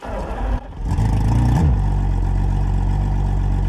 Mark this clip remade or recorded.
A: recorded